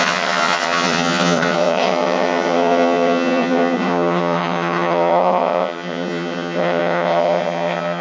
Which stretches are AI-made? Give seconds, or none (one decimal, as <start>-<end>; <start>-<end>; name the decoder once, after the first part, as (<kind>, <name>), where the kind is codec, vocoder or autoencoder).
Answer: 0.0-8.0 (vocoder, HiFi-GAN)